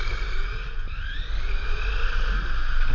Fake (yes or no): no